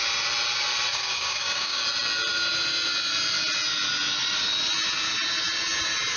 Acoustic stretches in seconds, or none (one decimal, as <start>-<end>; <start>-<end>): 0.0-0.9; 1.8-6.2